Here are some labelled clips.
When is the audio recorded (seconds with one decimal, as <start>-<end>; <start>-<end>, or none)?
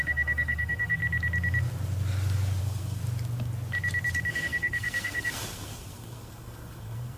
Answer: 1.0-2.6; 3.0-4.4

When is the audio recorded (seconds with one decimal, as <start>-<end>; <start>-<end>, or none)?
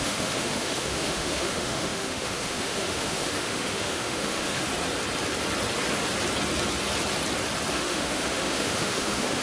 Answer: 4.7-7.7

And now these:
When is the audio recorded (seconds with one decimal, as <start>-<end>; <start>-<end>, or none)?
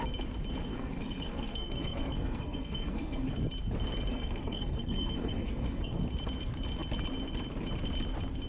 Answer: 0.0-0.7; 3.3-4.1; 6.0-8.5